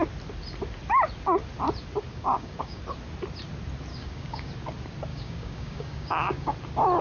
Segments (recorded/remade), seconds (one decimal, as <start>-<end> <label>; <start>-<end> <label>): 0.0-2.1 recorded; 2.1-2.8 remade; 2.8-3.9 recorded; 3.9-4.5 remade; 4.5-5.1 recorded; 5.1-6.5 remade; 6.5-7.0 recorded